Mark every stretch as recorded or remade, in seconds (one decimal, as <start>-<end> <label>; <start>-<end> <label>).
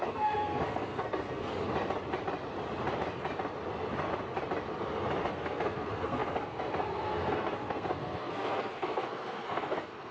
0.0-1.5 remade; 1.5-5.3 recorded; 5.3-10.1 remade